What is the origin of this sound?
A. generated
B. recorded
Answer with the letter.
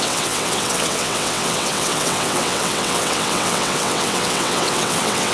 A